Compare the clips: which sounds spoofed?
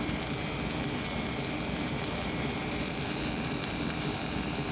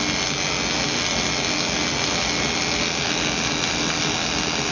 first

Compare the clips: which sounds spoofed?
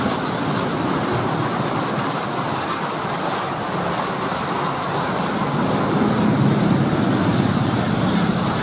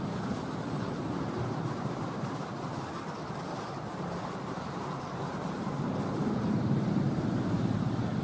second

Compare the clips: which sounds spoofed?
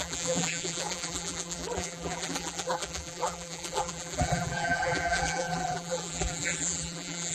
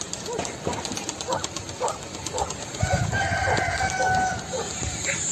first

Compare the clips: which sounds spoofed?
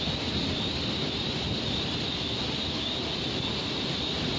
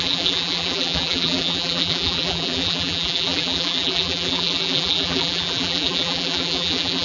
second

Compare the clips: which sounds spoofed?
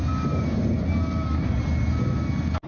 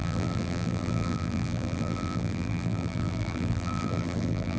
second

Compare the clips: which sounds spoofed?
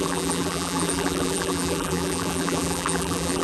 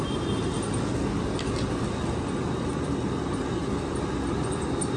first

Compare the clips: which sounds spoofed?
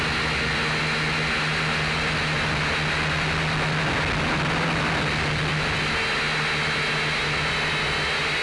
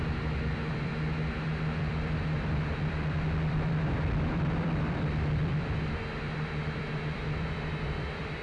second